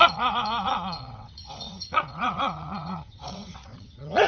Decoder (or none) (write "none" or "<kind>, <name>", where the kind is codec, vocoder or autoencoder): vocoder, WaveNeXt